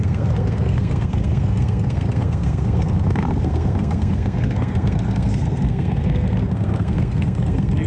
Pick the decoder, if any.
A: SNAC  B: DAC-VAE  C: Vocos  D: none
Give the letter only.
A